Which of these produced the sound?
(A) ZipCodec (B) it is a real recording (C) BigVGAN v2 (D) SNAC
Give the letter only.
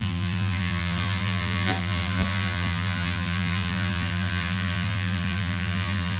C